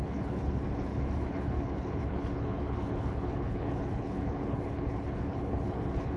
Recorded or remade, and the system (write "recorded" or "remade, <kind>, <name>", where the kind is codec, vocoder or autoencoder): remade, codec, HILCodec